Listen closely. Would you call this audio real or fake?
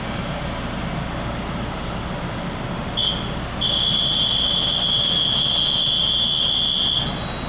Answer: real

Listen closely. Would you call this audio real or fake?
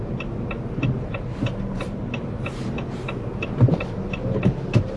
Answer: real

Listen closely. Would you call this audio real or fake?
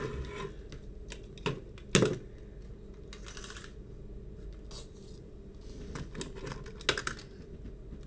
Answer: real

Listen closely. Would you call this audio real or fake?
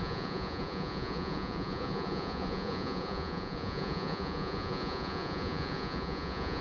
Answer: fake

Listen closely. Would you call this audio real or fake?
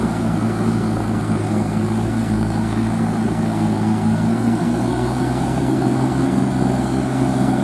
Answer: fake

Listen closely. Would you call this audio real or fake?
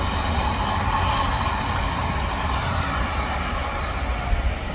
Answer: real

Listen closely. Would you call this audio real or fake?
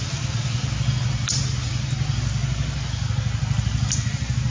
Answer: real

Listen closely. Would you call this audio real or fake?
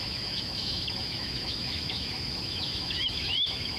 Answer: fake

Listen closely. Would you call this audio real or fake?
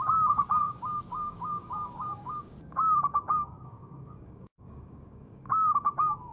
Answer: fake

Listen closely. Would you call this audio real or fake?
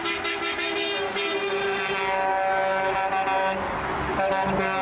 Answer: real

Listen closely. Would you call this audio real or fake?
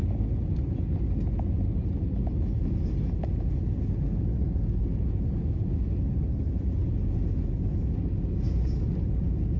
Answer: real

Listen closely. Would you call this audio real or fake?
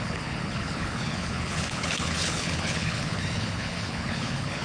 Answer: fake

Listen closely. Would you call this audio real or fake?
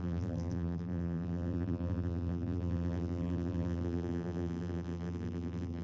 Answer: fake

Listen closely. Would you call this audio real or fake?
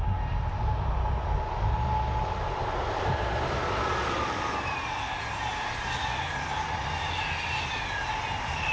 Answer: real